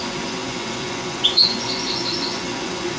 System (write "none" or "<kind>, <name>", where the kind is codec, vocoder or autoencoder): vocoder, Vocos